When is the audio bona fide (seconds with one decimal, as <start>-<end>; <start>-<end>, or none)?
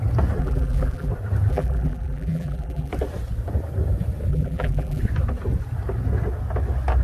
0.0-0.4; 1.1-1.5; 2.9-4.3; 5.0-7.0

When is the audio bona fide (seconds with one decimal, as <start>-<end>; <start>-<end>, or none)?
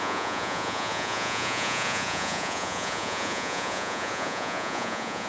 none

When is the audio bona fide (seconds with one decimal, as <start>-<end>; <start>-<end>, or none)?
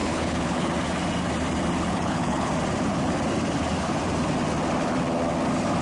0.7-1.9; 2.5-5.8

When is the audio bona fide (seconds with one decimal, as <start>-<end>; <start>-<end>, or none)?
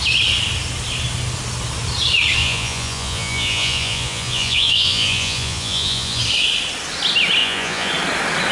0.0-2.4; 6.2-7.4; 7.9-8.5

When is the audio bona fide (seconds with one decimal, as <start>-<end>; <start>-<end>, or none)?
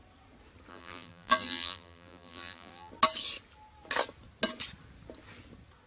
0.0-0.7; 2.9-5.9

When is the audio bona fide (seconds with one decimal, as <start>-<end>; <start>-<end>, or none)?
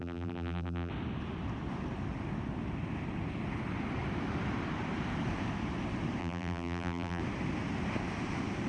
0.9-6.2; 7.2-8.7